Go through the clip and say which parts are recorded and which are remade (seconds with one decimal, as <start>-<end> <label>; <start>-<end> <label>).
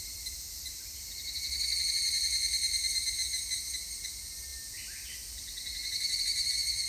0.0-6.9 recorded